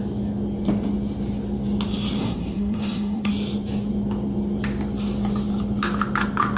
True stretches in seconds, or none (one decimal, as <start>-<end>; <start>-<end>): 0.0-2.2; 3.3-6.6